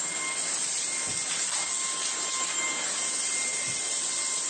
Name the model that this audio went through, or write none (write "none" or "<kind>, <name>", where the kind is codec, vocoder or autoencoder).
none